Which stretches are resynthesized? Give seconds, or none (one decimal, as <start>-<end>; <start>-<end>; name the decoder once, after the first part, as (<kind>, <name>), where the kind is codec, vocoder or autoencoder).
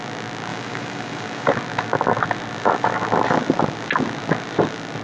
0.5-1.5 (vocoder, BigVGAN v2)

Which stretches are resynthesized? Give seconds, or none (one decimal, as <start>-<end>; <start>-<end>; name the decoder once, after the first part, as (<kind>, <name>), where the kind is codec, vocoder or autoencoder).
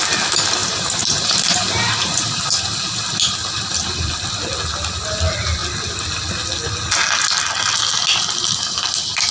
0.6-2.6 (vocoder, BigVGAN v2)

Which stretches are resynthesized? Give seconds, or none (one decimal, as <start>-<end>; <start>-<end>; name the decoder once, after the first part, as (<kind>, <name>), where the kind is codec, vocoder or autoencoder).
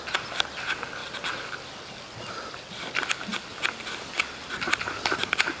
none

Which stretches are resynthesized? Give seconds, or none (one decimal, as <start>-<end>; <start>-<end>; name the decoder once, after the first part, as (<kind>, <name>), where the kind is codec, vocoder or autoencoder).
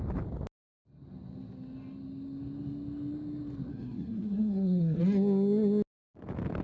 3.7-5.0 (codec, SNAC)